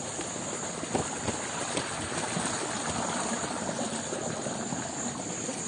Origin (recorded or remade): recorded